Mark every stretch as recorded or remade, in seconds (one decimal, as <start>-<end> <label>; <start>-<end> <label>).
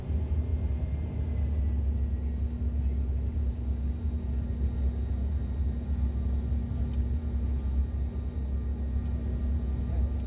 0.0-10.3 recorded